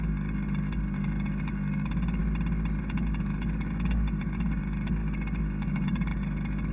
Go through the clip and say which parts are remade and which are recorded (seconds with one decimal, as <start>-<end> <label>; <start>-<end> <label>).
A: 0.0-2.2 remade; 2.2-2.8 recorded; 2.8-6.7 remade